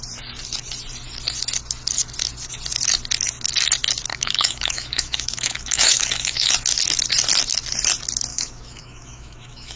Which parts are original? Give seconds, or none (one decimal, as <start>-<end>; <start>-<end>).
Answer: 0.0-4.1; 6.5-8.3